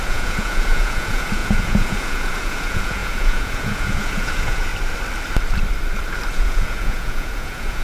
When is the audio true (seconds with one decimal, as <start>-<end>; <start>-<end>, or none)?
4.7-6.3